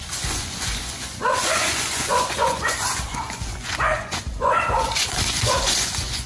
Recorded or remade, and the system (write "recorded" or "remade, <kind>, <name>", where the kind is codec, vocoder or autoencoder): remade, vocoder, Vocos